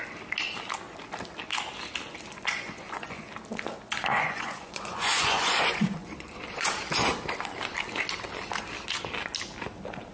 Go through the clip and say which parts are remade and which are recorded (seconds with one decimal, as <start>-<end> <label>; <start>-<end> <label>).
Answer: 0.0-2.3 recorded; 2.3-3.3 remade; 3.3-4.1 recorded; 4.1-6.7 remade; 6.7-10.1 recorded